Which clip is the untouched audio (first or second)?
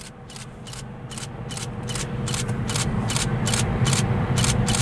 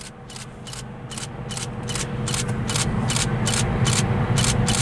second